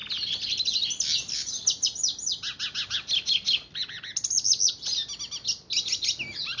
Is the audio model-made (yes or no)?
no